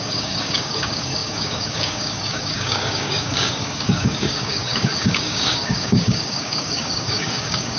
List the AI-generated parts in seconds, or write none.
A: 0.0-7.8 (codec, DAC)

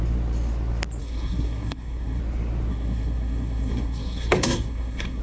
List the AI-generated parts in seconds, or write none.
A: 1.0-2.2 (codec, SNAC); 2.7-5.2

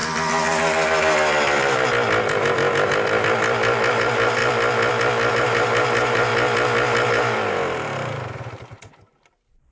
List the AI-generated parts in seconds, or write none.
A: 3.9-4.4 (vocoder, BigVGAN v2); 5.3-6.3; 7.1-9.7

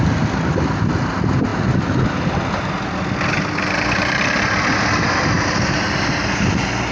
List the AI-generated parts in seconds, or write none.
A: none

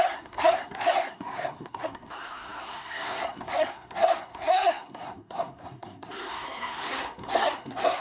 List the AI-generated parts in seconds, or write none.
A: 0.0-8.0 (codec, SNAC)

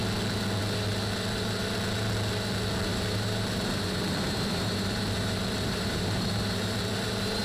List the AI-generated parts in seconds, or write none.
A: 2.9-7.4 (vocoder, BigVGAN v2)

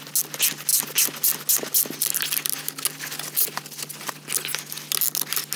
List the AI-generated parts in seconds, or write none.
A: none